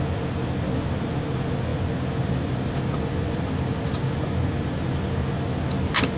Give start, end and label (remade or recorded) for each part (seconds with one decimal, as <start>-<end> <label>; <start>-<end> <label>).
0.0-6.2 recorded